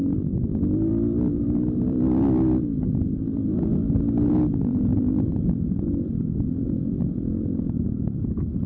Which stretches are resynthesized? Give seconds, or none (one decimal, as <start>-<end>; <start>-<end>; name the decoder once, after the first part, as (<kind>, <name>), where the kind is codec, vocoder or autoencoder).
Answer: 0.0-8.7 (vocoder, BigVGAN v2)